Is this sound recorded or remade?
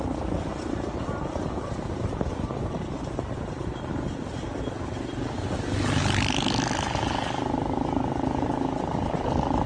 recorded